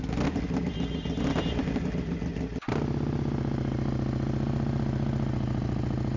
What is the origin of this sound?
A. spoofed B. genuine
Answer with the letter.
B